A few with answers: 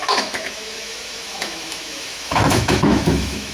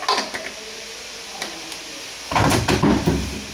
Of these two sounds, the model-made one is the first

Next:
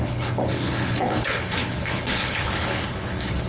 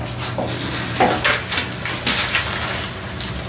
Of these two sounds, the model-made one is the first